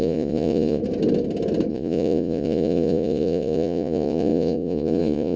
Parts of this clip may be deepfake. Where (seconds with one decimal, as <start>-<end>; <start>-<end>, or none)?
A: 0.0-0.8; 1.7-5.4